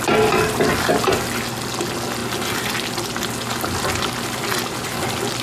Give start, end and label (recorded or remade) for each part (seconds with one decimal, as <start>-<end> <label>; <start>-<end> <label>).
0.0-5.4 recorded